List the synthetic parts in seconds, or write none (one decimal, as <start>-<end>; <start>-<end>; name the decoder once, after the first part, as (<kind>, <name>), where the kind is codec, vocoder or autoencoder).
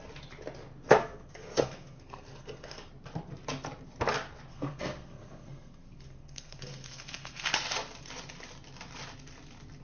1.0-2.9 (codec, SNAC); 4.5-7.5